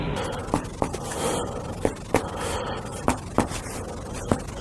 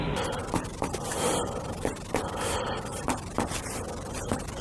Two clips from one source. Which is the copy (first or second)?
second